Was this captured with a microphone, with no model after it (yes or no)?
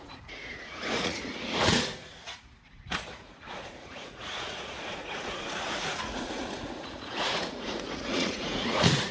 no